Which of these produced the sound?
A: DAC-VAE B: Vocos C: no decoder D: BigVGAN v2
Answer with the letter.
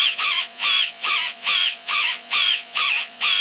B